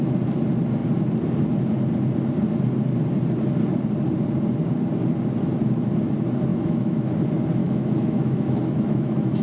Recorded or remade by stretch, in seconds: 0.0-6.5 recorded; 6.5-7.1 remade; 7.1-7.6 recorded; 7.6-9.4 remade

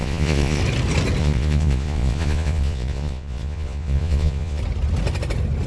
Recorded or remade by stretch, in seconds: 0.0-0.6 remade; 0.6-1.2 recorded; 1.2-4.6 remade; 4.6-5.7 recorded

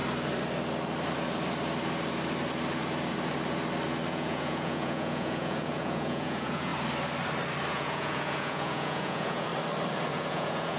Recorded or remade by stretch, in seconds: 0.0-4.1 recorded; 4.1-6.7 remade; 6.7-7.7 recorded; 7.7-9.5 remade; 9.5-10.1 recorded; 10.1-10.8 remade

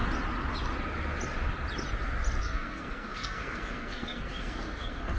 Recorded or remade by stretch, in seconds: 0.0-2.4 recorded; 2.4-5.2 remade

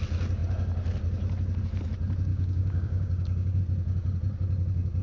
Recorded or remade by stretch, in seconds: 0.0-2.3 recorded; 2.3-3.6 remade; 3.6-5.0 recorded

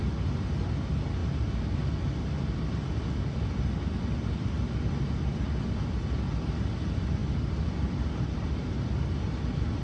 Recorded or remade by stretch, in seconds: 0.0-7.2 recorded; 7.2-9.8 remade

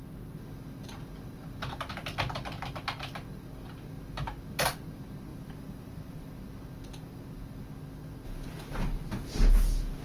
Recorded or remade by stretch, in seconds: 0.0-5.3 recorded; 5.3-6.3 remade; 6.3-10.0 recorded

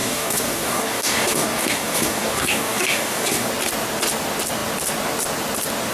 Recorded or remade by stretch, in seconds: 0.0-3.5 remade; 3.5-5.9 recorded